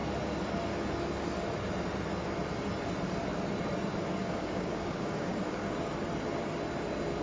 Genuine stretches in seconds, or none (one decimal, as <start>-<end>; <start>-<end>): 0.0-4.2; 5.9-7.2

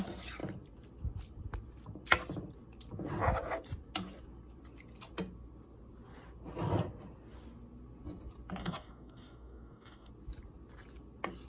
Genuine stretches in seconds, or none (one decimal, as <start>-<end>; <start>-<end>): 0.0-8.6; 10.1-11.5